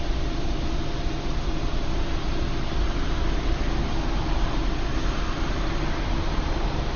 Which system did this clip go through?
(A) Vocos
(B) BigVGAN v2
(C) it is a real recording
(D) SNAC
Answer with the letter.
C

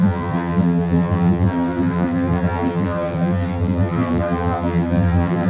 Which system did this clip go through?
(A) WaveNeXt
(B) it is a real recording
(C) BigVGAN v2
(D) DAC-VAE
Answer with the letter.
C